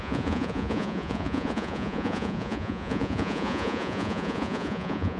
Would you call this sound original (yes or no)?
no